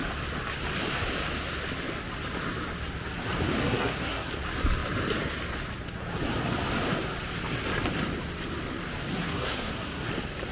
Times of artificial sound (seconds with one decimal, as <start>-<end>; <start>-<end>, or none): 3.6-4.3; 9.1-10.1